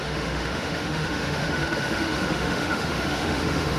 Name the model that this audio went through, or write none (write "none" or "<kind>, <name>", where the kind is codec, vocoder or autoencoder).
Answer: autoencoder, DAC-VAE